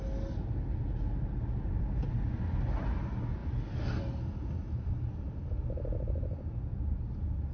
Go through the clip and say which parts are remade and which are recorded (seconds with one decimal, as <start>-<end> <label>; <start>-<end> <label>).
0.0-7.5 recorded